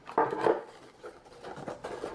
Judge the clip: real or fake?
fake